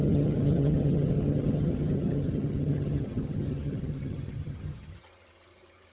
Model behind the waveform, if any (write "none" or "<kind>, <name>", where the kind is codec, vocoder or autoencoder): vocoder, HiFi-GAN